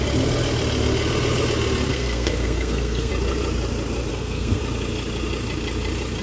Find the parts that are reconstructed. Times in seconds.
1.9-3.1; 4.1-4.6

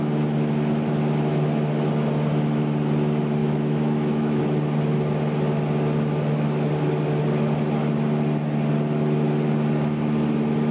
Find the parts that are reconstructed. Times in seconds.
3.4-4.4

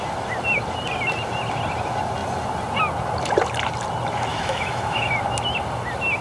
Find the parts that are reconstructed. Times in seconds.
4.3-5.1

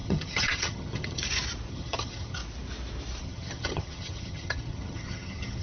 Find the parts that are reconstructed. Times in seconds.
0.0-1.2; 1.7-2.4; 3.2-5.6

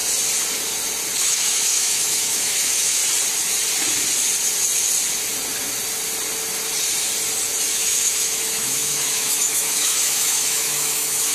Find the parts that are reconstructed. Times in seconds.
1.2-3.0; 7.7-11.3

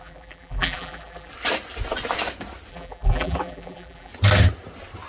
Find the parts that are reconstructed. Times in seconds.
0.0-1.3; 2.7-4.1

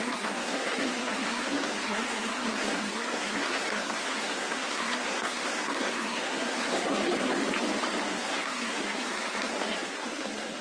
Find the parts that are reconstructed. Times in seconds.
0.0-7.4; 8.0-10.6